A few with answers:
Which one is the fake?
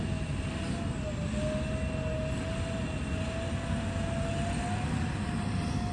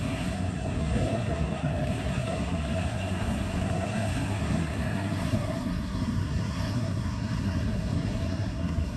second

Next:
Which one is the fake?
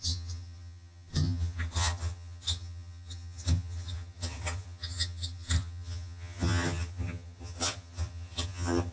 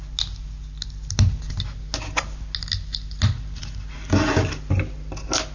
first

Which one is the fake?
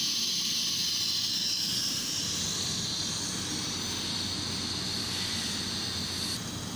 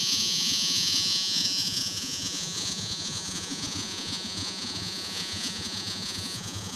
second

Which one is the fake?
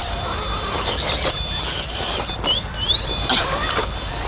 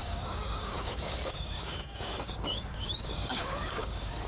second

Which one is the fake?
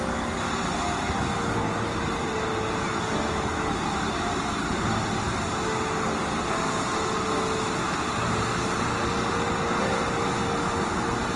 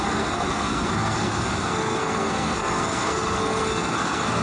second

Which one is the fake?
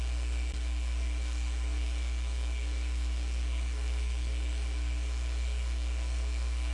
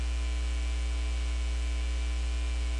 first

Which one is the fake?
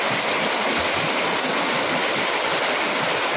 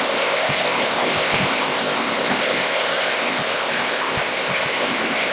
second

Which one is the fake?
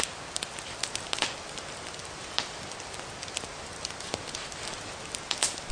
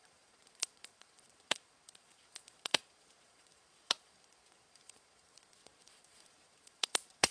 second